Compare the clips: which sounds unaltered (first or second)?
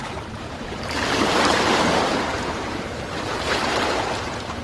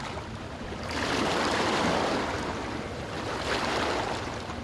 second